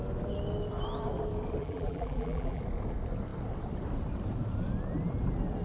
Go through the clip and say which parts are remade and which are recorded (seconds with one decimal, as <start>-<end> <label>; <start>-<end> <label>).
0.0-1.6 recorded; 1.6-2.6 remade; 2.6-5.6 recorded